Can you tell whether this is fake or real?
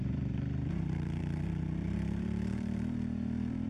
fake